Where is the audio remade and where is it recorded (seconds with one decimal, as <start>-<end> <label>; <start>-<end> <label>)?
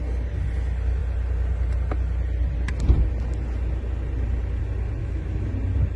0.0-5.0 recorded; 5.0-5.5 remade; 5.5-6.0 recorded